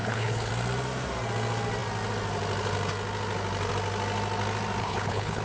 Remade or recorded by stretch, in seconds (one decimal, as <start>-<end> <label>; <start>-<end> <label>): 0.0-0.5 remade; 0.5-4.8 recorded; 4.8-5.4 remade